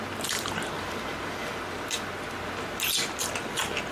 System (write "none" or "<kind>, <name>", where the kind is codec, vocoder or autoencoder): none